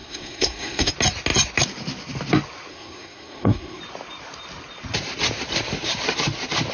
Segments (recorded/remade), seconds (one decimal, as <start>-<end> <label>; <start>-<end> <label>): 0.0-0.9 remade; 0.9-2.7 recorded; 2.7-3.8 remade; 3.8-6.7 recorded